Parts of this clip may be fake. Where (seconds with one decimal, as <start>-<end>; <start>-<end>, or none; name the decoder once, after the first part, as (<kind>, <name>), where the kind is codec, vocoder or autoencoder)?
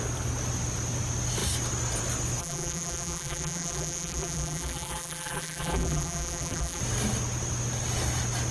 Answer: 2.4-6.8 (vocoder, BigVGAN v2)